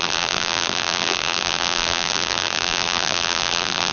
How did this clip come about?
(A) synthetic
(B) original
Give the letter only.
A